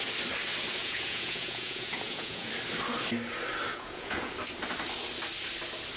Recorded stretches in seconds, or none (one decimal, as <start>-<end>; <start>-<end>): 0.0-0.8; 2.5-3.7; 4.3-6.0